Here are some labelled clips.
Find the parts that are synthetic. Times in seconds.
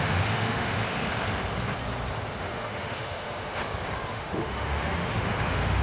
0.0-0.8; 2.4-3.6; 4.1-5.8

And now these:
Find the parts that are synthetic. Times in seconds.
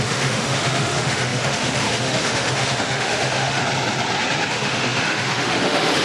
0.0-3.6; 4.5-6.0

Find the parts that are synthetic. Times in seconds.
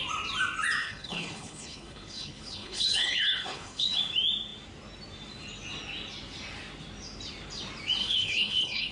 0.8-4.0; 8.0-8.9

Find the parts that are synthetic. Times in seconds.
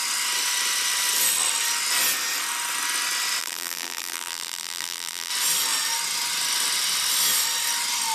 3.4-5.3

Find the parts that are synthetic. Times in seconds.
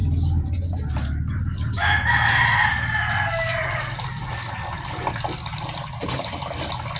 none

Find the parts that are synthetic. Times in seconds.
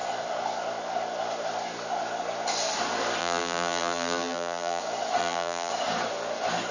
3.2-4.8; 5.2-5.7